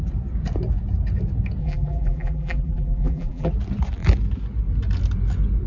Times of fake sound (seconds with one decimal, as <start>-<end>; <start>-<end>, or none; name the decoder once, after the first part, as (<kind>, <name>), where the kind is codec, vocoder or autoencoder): 1.6-3.5 (vocoder, BigVGAN v2)